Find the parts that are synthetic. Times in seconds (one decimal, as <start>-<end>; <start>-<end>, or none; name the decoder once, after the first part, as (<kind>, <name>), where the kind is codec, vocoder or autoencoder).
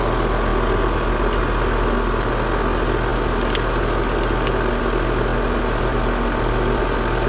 5.3-6.8 (vocoder, BigVGAN v2)